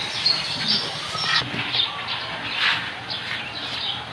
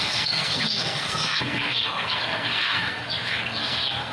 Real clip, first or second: first